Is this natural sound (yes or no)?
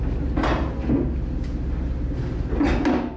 yes